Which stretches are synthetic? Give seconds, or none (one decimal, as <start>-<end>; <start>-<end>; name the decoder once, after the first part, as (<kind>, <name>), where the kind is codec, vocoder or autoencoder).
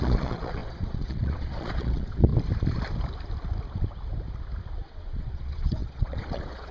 0.0-2.3 (vocoder, Vocos); 4.7-6.7